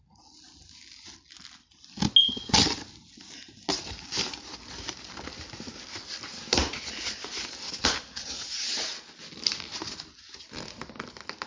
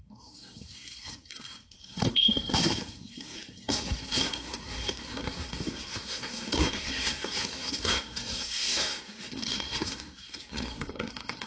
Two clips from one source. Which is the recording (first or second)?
first